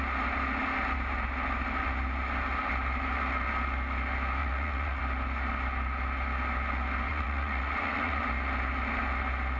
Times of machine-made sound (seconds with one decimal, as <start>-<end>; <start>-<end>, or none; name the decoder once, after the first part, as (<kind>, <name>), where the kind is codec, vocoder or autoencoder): 4.4-5.0 (vocoder, Vocos); 7.1-8.2

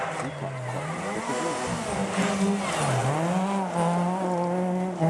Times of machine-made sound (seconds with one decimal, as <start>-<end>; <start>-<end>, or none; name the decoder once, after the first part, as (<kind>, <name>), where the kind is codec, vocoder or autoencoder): none

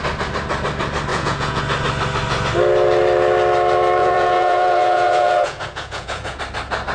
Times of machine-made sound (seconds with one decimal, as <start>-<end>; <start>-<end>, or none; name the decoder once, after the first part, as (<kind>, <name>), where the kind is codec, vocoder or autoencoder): 1.1-1.6 (vocoder, Vocos); 4.0-6.4

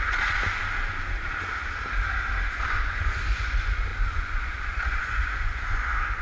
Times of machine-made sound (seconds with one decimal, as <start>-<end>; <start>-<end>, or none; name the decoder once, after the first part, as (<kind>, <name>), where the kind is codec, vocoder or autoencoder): 0.0-0.6 (vocoder, Vocos); 2.5-6.2

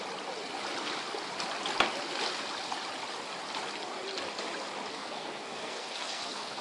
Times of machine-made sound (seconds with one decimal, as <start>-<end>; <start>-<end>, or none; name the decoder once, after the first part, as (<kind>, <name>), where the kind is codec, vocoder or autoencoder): 4.9-6.6 (codec, SNAC)

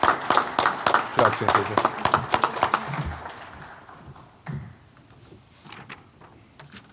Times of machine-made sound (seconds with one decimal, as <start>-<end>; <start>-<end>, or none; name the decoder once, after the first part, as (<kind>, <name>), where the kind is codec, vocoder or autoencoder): none